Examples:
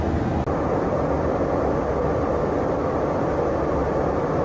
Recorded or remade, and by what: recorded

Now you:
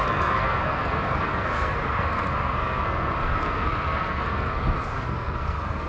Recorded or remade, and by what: remade, codec, SNAC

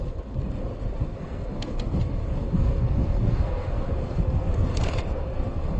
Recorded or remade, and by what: remade, codec, SNAC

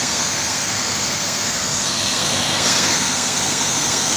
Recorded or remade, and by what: remade, codec, SNAC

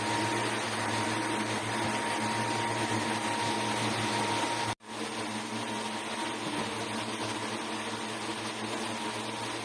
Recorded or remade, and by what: recorded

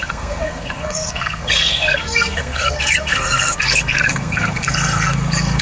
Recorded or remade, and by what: remade, codec, SNAC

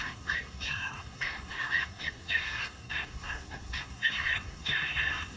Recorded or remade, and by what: remade, codec, SNAC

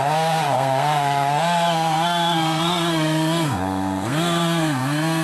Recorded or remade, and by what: remade, codec, SNAC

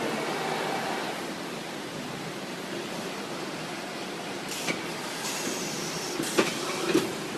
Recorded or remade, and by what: recorded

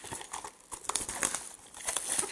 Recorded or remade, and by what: recorded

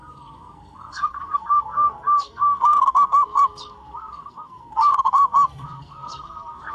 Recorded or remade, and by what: remade, codec, SNAC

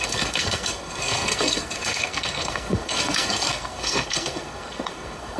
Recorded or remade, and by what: remade, codec, SNAC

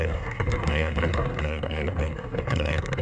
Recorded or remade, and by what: remade, codec, SNAC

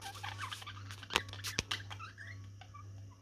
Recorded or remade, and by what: recorded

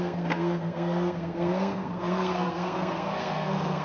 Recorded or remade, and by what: remade, codec, SNAC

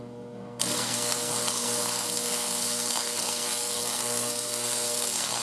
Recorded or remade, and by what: remade, codec, SNAC